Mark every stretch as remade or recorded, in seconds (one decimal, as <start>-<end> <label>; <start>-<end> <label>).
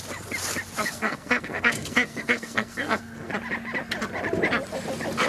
0.0-0.8 recorded; 0.8-3.3 remade; 3.3-5.3 recorded